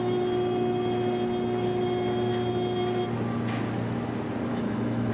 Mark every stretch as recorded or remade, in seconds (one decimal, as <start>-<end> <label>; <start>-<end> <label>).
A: 0.0-4.5 recorded; 4.5-5.1 remade